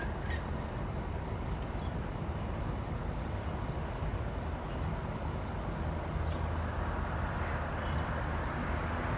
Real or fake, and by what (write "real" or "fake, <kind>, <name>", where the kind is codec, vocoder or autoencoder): real